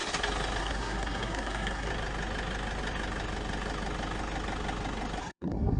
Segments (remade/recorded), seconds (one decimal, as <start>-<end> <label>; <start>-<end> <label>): 0.0-0.6 recorded; 0.6-1.9 remade; 1.9-5.2 recorded; 5.2-5.8 remade